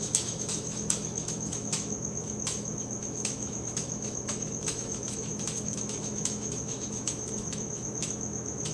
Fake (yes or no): yes